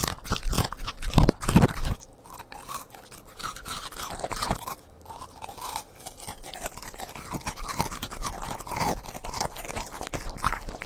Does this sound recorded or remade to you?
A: recorded